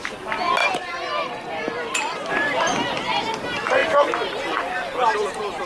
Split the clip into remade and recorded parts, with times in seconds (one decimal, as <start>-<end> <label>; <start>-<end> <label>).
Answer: 0.0-0.6 recorded; 0.6-2.3 remade; 2.3-5.7 recorded